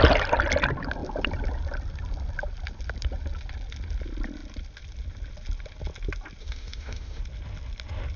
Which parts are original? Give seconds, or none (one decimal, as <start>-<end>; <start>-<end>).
0.0-6.4; 7.2-8.2